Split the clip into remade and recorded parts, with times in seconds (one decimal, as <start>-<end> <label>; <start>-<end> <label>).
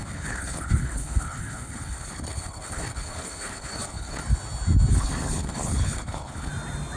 0.0-4.2 remade; 4.2-4.9 recorded; 4.9-6.5 remade; 6.5-7.0 recorded